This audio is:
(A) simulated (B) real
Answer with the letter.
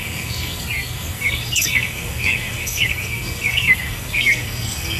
A